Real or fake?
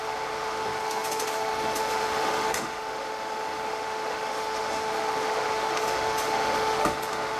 fake